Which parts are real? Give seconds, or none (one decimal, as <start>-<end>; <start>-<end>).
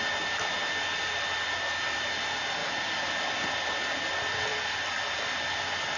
0.0-2.6; 3.7-4.5